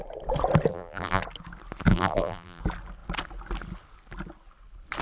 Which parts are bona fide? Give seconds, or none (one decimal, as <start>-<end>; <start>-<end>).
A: 0.0-0.7; 1.2-1.9; 2.6-5.0